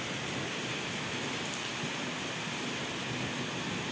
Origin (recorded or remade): recorded